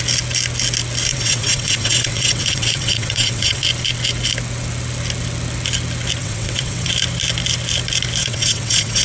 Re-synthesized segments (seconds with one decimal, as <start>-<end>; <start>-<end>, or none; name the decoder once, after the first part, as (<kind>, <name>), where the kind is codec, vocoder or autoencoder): 1.1-3.6 (vocoder, WaveNeXt); 6.2-6.9; 8.2-9.0